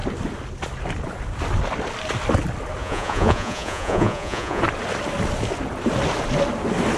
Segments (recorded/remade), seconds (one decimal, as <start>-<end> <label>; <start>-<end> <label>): 0.0-2.8 recorded; 2.8-4.6 remade; 4.6-7.0 recorded